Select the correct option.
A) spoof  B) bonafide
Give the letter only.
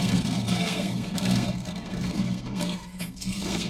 A